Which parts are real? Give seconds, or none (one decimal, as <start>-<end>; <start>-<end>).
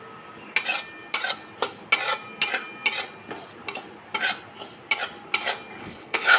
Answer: 0.0-5.8